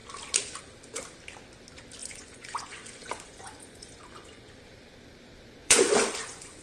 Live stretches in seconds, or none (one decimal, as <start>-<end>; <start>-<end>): 0.0-2.0; 4.5-5.6

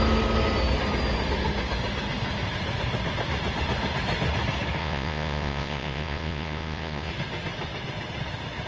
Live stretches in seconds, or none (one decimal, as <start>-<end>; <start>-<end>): 0.0-4.8; 7.1-8.7

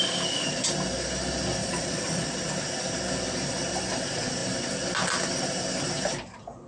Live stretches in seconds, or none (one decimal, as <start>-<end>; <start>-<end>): 0.0-1.6; 2.3-6.7